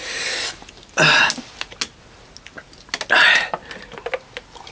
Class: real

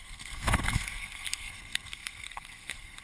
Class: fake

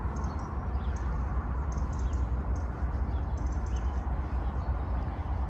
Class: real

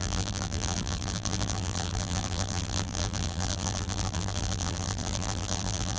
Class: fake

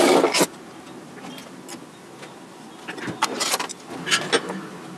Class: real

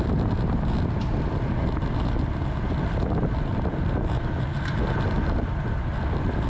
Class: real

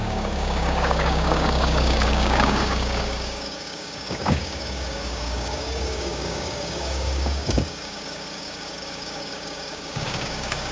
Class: fake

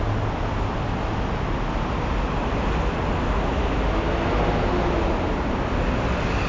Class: real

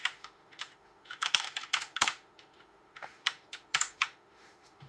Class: fake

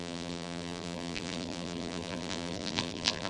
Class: fake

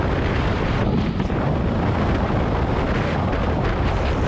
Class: real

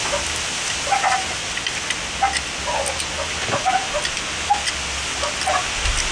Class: real